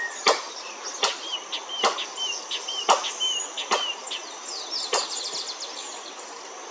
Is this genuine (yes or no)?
yes